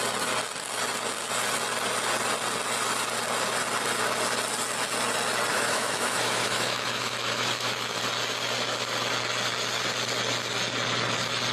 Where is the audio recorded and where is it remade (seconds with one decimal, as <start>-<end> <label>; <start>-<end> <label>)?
0.0-5.5 recorded; 5.5-8.0 remade; 8.0-11.5 recorded